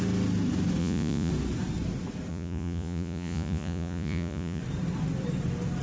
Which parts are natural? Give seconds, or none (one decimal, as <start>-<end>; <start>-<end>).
0.0-0.8; 1.3-2.3; 4.6-5.8